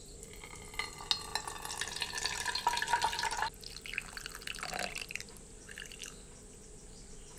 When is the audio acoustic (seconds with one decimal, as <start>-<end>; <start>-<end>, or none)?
0.0-7.4